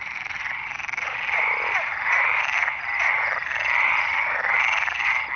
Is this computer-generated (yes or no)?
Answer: yes